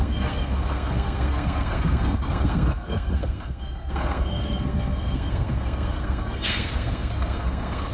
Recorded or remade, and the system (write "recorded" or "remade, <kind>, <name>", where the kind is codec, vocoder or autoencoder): remade, codec, SNAC